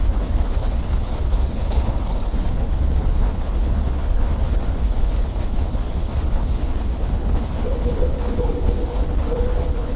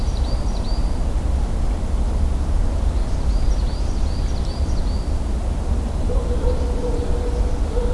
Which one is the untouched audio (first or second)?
second